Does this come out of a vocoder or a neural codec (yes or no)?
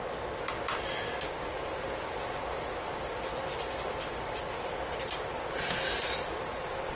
no